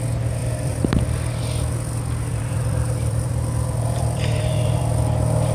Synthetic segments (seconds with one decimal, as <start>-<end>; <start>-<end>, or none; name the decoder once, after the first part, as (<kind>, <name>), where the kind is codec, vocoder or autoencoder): 0.4-1.4 (vocoder, BigVGAN v2); 2.3-4.8